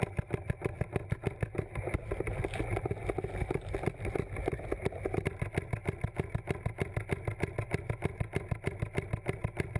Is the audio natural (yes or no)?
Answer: yes